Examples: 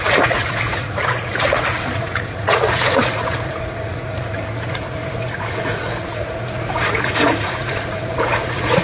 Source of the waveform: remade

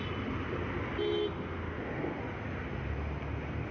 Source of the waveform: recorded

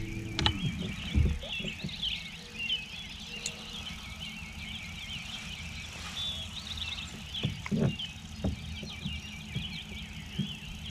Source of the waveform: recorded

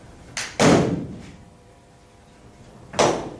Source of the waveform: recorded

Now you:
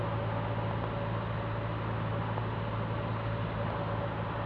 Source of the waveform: recorded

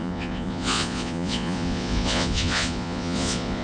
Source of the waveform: remade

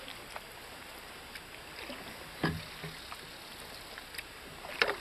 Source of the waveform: recorded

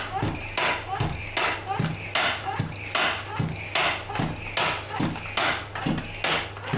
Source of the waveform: recorded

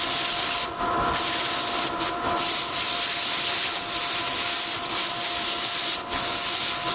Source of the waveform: recorded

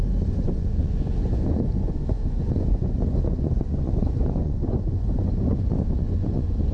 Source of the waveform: remade